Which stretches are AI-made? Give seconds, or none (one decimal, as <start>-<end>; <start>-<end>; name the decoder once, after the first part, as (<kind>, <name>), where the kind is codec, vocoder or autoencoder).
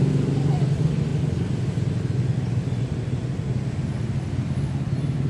none